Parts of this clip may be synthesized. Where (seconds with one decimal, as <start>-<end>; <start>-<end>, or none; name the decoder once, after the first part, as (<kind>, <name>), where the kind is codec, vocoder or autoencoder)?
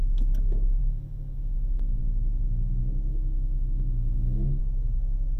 0.8-2.0 (autoencoder, DAC-VAE); 3.1-4.6